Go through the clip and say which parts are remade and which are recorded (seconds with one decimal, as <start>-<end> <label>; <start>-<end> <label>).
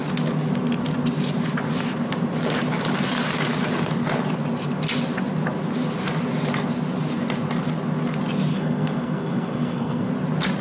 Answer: 0.0-8.5 recorded; 8.5-10.1 remade; 10.1-10.6 recorded